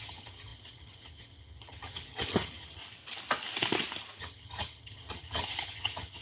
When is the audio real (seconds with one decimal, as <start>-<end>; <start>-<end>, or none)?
2.8-4.2